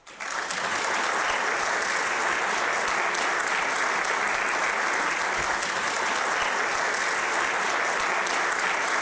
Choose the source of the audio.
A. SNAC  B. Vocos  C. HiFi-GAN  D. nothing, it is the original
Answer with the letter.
D